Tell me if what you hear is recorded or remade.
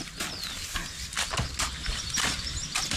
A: recorded